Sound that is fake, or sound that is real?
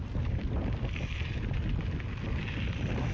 real